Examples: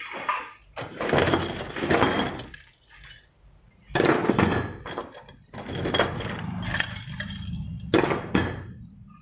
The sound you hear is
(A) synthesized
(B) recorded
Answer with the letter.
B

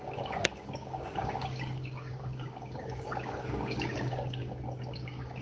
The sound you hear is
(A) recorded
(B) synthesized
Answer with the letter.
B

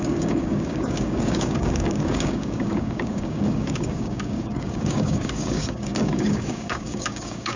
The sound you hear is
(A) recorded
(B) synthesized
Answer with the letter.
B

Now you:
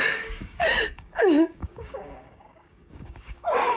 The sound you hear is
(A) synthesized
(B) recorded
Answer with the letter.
A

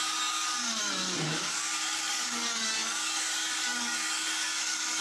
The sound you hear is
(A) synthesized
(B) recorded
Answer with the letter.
A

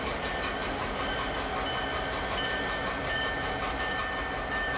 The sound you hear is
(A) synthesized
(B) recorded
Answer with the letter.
B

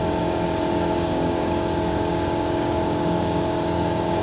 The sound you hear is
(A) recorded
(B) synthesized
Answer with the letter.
B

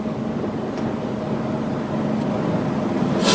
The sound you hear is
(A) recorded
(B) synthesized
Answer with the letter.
A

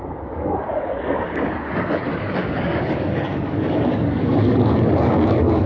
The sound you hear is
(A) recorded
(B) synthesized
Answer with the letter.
B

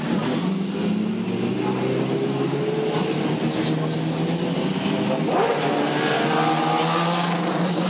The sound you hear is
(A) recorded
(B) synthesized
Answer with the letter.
A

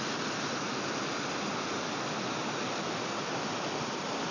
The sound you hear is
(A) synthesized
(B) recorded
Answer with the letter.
B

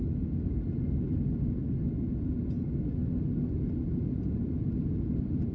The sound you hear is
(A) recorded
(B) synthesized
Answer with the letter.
A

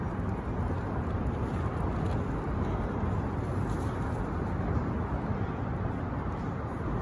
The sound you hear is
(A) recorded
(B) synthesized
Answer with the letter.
A